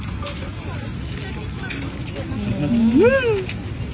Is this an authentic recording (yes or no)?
yes